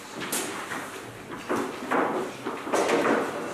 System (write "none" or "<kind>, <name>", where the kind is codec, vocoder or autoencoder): none